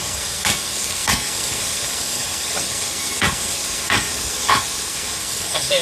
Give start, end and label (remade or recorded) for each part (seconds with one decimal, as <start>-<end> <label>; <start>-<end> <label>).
0.0-5.8 remade